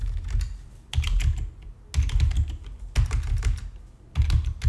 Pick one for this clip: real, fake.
real